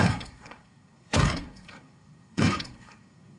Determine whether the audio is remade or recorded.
remade